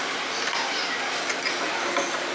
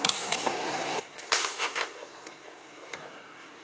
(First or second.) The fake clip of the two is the second